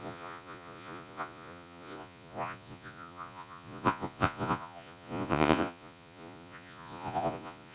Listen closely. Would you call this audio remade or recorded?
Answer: remade